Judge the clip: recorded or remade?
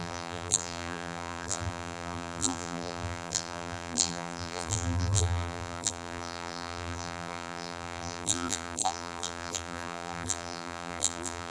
remade